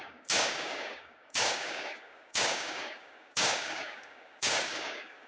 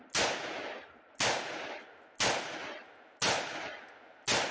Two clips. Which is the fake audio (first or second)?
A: first